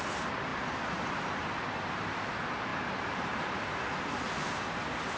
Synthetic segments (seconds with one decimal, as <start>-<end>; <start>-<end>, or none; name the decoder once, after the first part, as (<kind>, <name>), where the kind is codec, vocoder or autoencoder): none